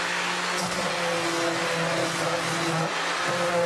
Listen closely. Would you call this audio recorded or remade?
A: recorded